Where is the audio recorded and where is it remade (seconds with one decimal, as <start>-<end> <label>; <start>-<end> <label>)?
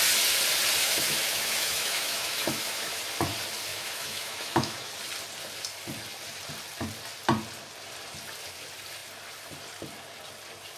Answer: 0.0-0.8 recorded; 0.8-3.0 remade; 3.0-3.7 recorded; 3.7-4.9 remade; 4.9-10.8 recorded